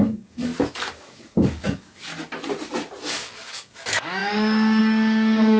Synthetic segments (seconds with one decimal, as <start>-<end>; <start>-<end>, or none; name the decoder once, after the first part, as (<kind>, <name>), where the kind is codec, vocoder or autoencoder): 0.0-0.5 (codec, DAC); 1.0-2.1; 3.1-5.6